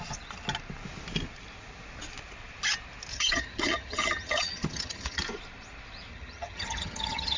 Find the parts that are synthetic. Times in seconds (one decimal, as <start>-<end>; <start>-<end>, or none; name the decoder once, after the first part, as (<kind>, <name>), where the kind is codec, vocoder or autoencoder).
3.1-5.2 (vocoder, HiFi-GAN); 6.1-7.4